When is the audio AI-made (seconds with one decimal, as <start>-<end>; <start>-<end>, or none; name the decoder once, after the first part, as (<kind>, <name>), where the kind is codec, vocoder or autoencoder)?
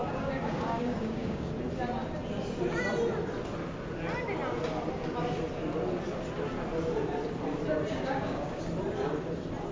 0.0-1.5 (codec, DAC); 7.9-8.6